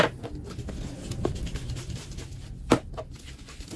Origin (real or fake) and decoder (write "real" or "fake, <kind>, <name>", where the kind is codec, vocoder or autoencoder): real